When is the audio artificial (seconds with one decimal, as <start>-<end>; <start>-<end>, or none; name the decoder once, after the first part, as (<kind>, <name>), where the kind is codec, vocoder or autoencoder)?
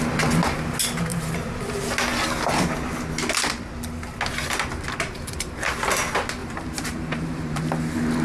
1.1-1.7 (vocoder, BigVGAN v2); 6.4-7.6